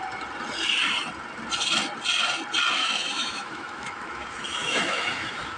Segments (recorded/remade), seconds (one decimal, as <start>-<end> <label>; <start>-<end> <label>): 0.0-2.8 recorded; 2.8-5.6 remade